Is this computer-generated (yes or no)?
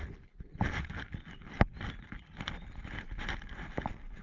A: no